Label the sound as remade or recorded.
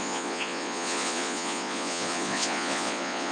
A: remade